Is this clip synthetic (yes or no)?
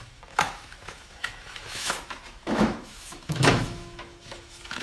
yes